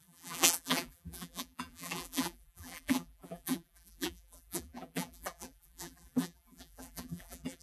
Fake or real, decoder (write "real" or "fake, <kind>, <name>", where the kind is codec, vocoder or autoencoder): fake, vocoder, BigVGAN v2